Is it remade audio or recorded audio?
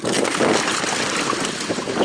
recorded